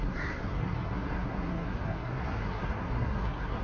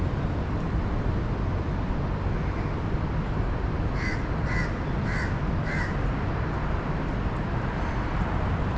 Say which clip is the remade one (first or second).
first